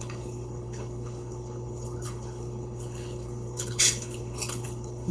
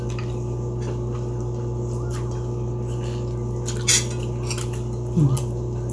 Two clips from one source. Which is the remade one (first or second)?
first